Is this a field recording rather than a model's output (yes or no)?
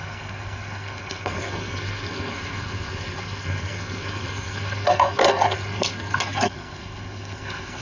no